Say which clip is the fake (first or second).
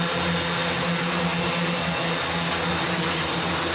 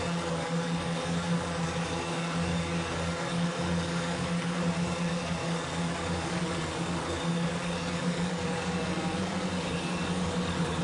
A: second